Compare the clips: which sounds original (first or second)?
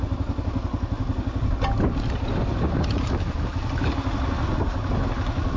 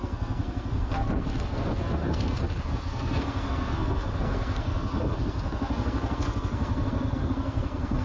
first